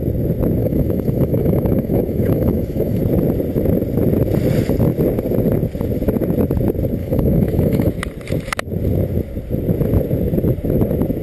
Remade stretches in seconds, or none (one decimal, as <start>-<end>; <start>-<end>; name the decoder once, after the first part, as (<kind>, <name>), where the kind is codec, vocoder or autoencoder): 0.6-3.0 (autoencoder, DAC-VAE); 7.0-7.9